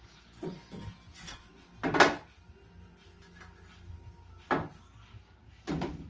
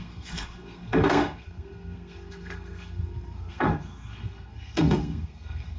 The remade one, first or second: second